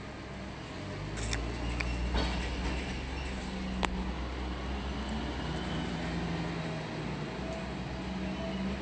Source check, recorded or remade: recorded